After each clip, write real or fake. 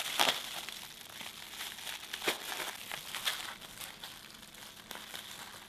real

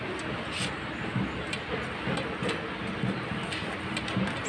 real